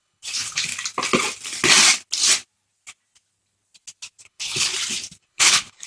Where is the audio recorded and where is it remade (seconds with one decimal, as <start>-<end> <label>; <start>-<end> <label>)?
0.0-0.7 remade; 0.7-4.2 recorded; 4.2-4.7 remade; 4.7-5.2 recorded; 5.2-5.9 remade